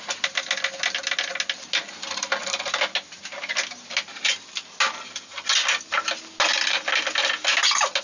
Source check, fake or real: real